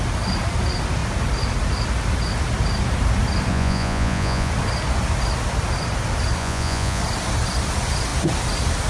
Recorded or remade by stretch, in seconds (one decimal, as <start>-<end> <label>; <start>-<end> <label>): 0.0-3.5 recorded; 3.5-4.5 remade; 4.5-6.4 recorded; 6.4-7.0 remade; 7.0-8.9 recorded